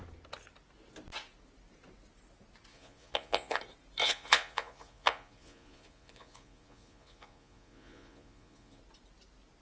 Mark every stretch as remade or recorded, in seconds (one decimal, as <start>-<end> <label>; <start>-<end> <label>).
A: 0.0-2.7 recorded; 2.7-3.6 remade; 3.6-4.0 recorded; 4.0-8.8 remade; 8.8-9.6 recorded